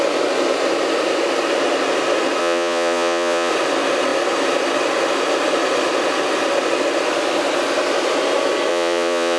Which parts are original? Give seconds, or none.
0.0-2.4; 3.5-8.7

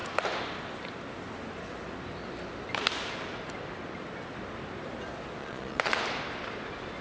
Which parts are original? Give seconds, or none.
0.0-5.4; 6.0-7.0